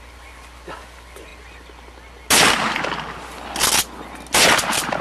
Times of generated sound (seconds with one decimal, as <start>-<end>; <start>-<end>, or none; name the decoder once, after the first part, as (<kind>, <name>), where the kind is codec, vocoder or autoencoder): none